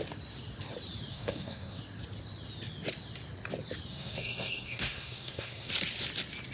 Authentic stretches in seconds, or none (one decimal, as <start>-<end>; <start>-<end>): 0.0-1.1; 1.8-3.9; 5.7-6.5